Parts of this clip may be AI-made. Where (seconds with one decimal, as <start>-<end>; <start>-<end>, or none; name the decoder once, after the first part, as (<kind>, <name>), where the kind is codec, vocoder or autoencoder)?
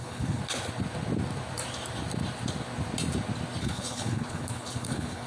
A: 0.0-0.4 (codec, HILCodec); 3.6-5.3